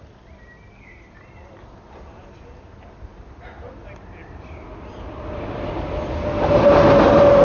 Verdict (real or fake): real